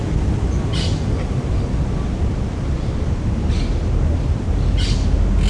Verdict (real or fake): real